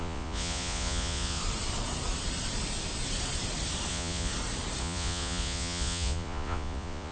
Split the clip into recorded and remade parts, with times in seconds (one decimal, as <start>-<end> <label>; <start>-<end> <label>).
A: 0.0-1.4 remade; 1.4-3.9 recorded; 3.9-4.3 remade; 4.3-4.8 recorded; 4.8-7.1 remade